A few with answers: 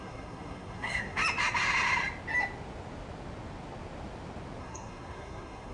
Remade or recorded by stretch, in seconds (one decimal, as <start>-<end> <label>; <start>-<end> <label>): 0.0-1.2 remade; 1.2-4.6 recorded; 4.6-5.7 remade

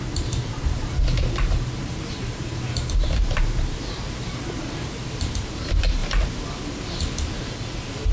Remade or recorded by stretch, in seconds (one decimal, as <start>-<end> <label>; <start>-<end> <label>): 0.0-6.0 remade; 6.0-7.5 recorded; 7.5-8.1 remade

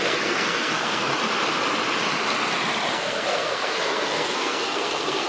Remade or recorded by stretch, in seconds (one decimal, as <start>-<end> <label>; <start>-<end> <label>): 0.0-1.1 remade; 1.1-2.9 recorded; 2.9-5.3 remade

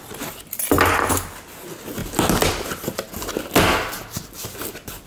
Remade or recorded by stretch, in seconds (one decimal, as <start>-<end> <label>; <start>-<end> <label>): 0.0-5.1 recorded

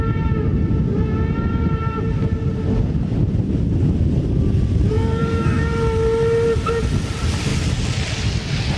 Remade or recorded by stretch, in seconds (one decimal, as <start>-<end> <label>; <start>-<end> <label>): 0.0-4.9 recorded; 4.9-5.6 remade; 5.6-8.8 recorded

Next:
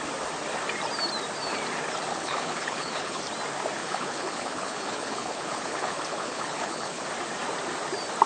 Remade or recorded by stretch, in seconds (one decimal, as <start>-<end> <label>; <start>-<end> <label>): 0.0-2.1 recorded; 2.1-3.2 remade; 3.2-3.8 recorded; 3.8-7.0 remade; 7.0-8.3 recorded

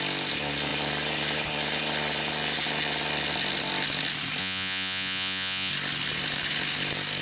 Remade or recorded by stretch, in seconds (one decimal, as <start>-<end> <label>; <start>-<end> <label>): 0.0-4.4 recorded; 4.4-5.7 remade; 5.7-7.2 recorded

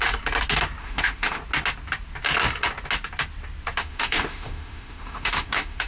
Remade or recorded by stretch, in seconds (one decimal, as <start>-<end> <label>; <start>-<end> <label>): 0.0-0.8 recorded; 0.8-1.4 remade; 1.4-3.8 recorded; 3.8-5.9 remade